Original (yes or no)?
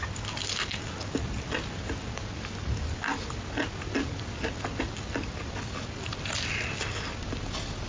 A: yes